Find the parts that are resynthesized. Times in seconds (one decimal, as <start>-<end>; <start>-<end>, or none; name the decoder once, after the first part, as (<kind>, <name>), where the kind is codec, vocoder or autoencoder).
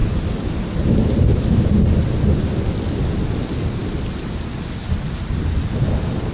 0.0-1.7 (vocoder, BigVGAN v2); 4.8-5.6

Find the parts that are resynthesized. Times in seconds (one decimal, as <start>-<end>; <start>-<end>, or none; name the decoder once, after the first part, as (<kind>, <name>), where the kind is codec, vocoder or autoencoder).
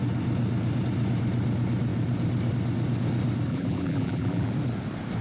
3.5-4.5 (vocoder, BigVGAN v2)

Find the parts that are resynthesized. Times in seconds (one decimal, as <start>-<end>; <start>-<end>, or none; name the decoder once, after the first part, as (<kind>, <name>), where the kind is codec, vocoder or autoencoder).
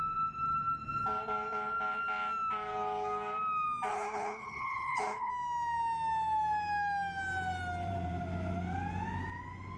3.9-5.3 (codec, HILCodec)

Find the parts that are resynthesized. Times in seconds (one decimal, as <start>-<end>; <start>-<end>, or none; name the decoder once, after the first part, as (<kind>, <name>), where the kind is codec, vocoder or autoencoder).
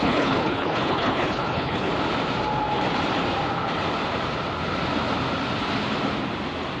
0.0-1.9 (codec, HILCodec)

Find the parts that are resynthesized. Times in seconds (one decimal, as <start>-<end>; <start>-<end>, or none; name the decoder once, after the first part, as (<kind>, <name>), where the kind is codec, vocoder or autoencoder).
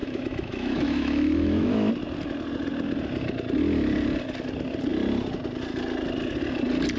0.0-1.9 (autoencoder, DAC-VAE)